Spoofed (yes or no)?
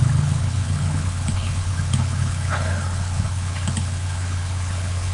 yes